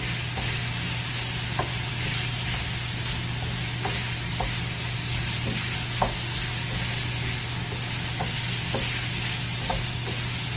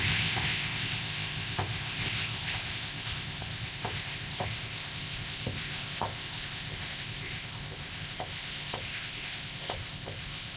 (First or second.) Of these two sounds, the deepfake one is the second